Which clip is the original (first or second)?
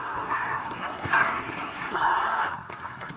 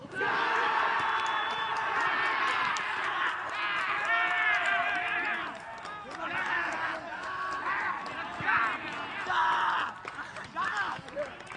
second